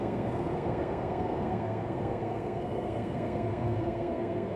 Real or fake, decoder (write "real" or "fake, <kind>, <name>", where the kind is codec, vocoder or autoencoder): fake, codec, SNAC